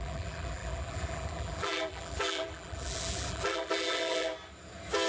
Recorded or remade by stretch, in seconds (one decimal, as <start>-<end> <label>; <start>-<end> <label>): 0.0-4.3 remade; 4.3-5.1 recorded